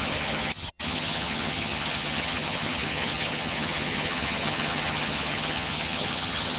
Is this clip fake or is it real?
fake